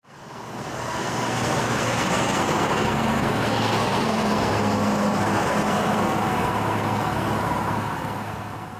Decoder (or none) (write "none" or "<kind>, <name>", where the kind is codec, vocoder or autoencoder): codec, SNAC